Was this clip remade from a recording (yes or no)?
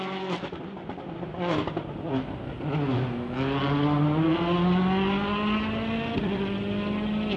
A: no